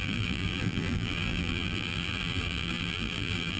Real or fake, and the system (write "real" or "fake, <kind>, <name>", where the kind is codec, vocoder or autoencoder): fake, vocoder, BigVGAN v2